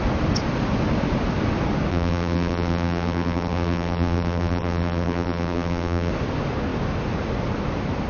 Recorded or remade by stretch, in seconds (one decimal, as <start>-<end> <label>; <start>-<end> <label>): 0.0-1.9 recorded; 1.9-6.1 remade; 6.1-8.1 recorded